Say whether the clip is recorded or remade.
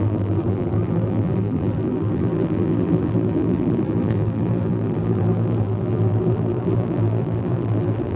remade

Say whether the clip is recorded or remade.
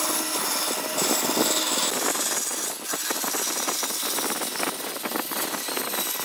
recorded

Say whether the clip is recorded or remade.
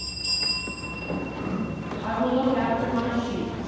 recorded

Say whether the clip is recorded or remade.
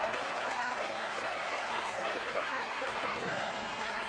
remade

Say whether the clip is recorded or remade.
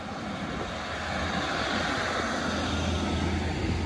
recorded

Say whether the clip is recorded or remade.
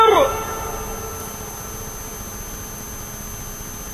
recorded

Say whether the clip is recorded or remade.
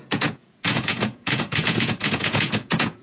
remade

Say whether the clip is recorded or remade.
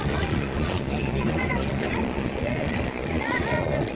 remade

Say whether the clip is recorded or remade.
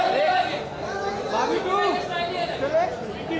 recorded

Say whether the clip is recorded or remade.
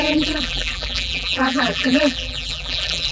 remade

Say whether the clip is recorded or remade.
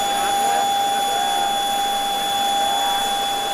recorded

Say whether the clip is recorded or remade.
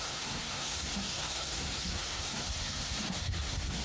remade